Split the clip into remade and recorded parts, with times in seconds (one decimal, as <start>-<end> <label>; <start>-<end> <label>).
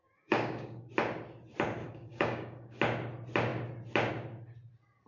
0.0-0.9 remade; 0.9-1.8 recorded; 1.8-2.8 remade; 2.8-5.1 recorded